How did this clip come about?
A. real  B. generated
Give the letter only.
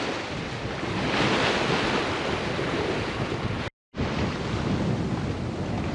A